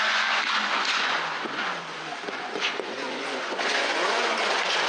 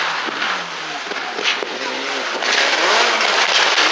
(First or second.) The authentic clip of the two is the second